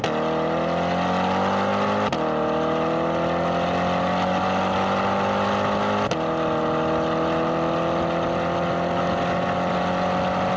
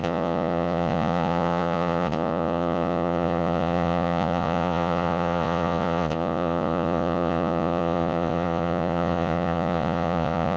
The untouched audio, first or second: first